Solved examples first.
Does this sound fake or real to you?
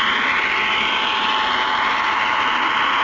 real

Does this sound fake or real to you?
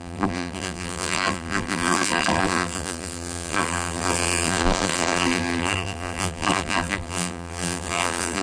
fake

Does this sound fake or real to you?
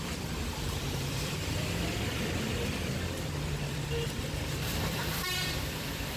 fake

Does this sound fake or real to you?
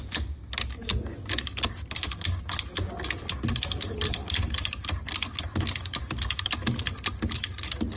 real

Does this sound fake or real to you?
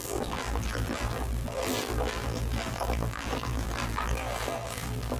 fake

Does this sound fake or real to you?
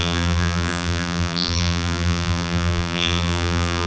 fake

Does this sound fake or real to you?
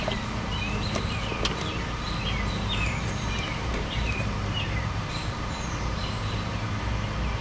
fake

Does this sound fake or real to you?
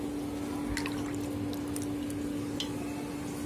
real